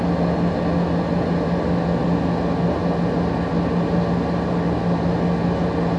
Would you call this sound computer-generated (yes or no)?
no